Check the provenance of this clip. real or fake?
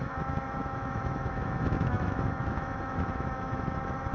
fake